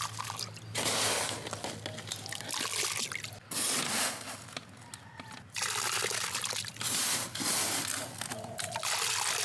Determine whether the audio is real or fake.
real